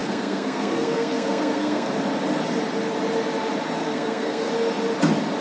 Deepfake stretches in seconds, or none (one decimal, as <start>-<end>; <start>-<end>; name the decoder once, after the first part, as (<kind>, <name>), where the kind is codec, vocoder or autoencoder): 0.0-1.9 (codec, SNAC); 3.8-4.5